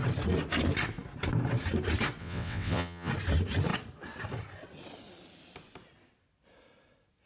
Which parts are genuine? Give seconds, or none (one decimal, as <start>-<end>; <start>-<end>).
0.0-2.2; 3.1-7.3